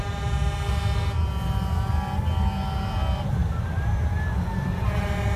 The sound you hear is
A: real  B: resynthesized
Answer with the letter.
A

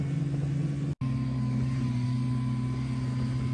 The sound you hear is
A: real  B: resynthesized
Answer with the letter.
A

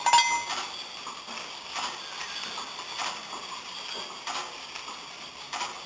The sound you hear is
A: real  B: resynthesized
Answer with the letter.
A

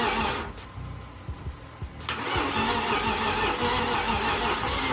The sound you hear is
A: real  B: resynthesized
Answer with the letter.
A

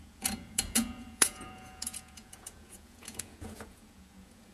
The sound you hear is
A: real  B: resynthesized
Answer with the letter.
B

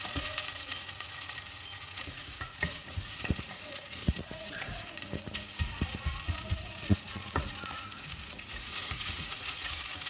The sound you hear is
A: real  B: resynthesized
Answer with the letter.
B